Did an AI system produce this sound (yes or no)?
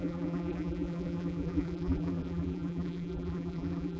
yes